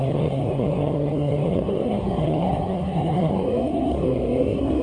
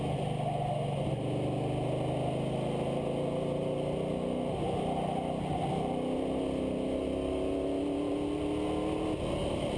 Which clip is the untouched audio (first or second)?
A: second